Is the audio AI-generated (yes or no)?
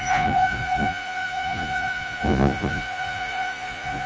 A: yes